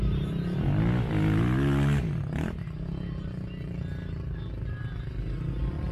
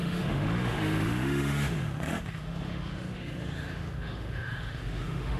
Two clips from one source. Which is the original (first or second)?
first